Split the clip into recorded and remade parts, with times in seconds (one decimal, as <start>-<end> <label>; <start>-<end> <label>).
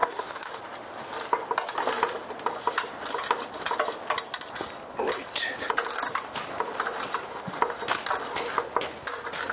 0.0-0.5 remade; 0.5-9.5 recorded